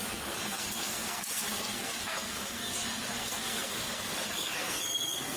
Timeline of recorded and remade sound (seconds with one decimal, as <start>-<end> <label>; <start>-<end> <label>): 0.0-5.4 remade

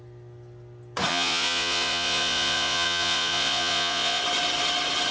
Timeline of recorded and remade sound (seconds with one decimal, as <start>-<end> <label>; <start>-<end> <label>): 0.0-1.1 recorded; 1.1-4.2 remade; 4.2-5.1 recorded